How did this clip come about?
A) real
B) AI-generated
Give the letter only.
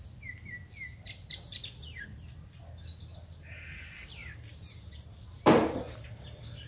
A